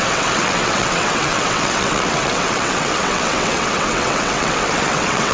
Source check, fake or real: fake